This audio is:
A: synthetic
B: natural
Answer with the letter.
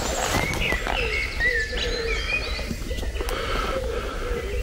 B